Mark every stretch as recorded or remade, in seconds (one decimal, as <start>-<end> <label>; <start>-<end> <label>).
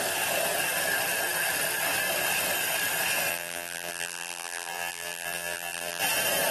0.0-3.3 recorded; 3.3-6.0 remade; 6.0-6.5 recorded